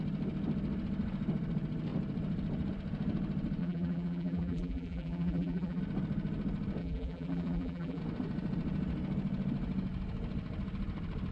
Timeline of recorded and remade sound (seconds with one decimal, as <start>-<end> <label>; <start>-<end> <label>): 0.0-3.6 recorded; 3.6-5.8 remade; 5.8-6.8 recorded; 6.8-8.0 remade; 8.0-11.3 recorded